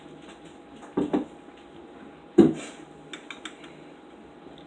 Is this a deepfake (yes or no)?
no